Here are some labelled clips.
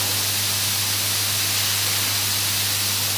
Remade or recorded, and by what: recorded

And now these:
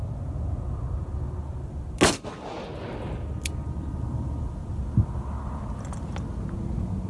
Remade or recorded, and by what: recorded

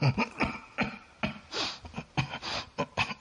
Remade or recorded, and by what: recorded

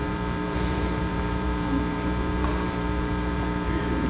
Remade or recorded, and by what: remade, vocoder, BigVGAN v2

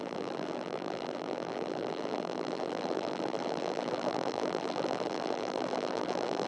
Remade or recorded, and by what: remade, vocoder, BigVGAN v2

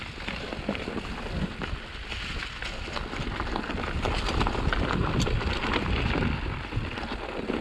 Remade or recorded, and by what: recorded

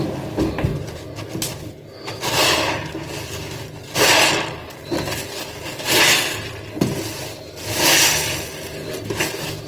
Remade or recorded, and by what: recorded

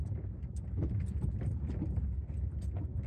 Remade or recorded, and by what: recorded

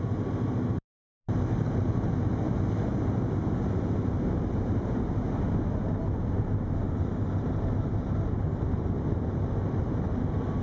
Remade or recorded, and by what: recorded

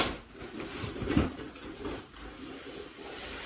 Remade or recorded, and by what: remade, vocoder, BigVGAN v2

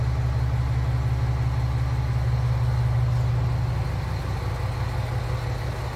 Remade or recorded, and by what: recorded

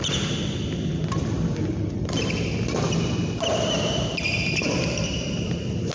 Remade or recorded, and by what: recorded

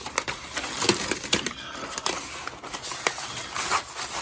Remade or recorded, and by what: recorded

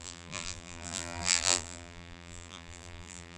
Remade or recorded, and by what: remade, vocoder, BigVGAN v2